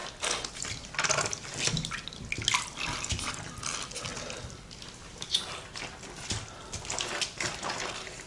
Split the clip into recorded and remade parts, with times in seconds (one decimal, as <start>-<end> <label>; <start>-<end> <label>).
0.0-8.3 recorded